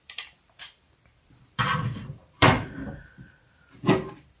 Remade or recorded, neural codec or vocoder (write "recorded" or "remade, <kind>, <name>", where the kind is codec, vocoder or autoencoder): remade, vocoder, BigVGAN v2